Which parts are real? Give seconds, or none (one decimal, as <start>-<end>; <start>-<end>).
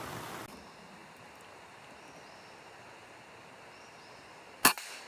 0.0-5.1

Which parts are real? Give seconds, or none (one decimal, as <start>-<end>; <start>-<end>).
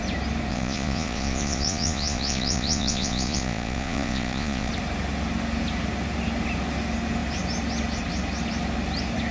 0.0-0.5; 4.7-9.3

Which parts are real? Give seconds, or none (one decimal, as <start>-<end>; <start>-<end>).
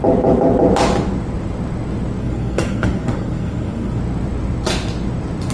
0.0-2.2; 4.0-5.5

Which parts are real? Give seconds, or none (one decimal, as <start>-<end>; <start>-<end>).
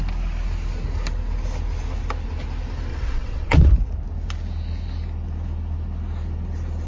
0.0-2.9; 3.7-6.9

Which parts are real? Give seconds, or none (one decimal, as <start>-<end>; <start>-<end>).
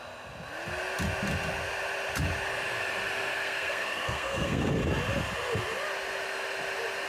0.0-3.3; 4.8-7.1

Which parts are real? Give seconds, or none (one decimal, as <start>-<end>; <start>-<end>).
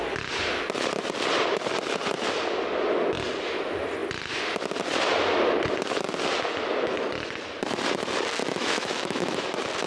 0.0-8.4; 9.4-9.9